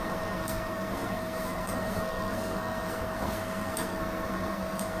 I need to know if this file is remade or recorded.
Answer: remade